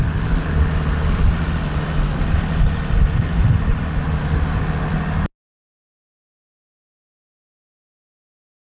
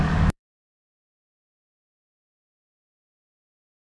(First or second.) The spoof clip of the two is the second